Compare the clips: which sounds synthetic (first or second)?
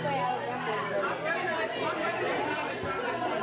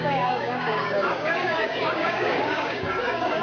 second